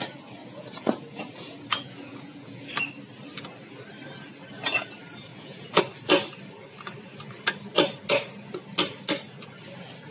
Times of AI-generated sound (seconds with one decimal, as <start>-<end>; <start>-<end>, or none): 0.4-2.7; 5.3-5.8